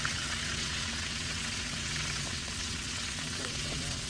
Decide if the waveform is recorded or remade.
remade